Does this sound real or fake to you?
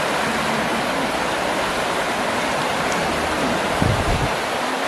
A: real